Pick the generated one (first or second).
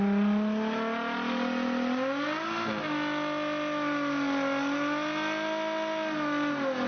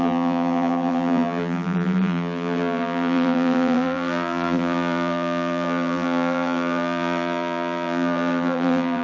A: second